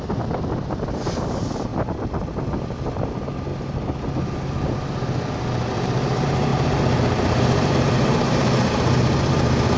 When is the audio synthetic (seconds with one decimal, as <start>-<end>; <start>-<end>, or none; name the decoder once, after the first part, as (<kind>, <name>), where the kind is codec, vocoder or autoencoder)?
0.0-1.7 (vocoder, BigVGAN v2); 2.6-3.5; 5.7-6.5; 7.7-9.8